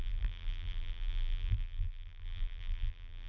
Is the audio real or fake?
fake